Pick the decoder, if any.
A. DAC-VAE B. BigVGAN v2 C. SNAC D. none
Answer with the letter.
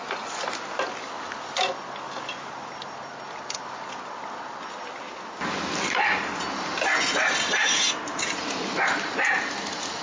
D